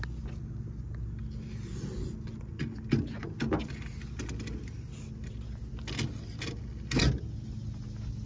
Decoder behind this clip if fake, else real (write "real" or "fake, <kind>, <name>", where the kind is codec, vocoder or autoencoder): real